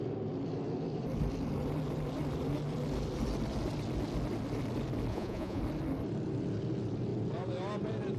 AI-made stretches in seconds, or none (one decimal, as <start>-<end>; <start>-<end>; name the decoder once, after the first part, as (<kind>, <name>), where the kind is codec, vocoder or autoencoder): 5.1-5.6 (vocoder, Vocos)